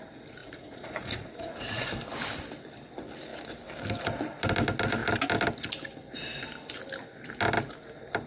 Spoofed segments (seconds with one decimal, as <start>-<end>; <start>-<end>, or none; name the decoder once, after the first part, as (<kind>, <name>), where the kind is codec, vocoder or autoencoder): 0.4-1.9 (vocoder, Vocos)

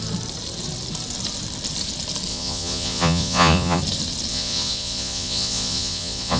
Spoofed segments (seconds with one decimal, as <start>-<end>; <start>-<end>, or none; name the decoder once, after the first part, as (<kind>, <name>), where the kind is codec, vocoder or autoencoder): 2.3-3.8 (vocoder, Vocos); 4.3-6.4